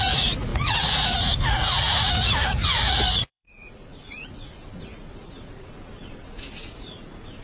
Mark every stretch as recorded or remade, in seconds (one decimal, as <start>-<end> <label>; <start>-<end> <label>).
0.0-7.4 remade